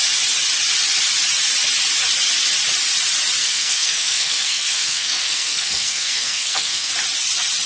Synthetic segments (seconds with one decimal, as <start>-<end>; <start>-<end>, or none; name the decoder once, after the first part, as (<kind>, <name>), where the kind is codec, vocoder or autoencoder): 3.4-6.9 (codec, SNAC)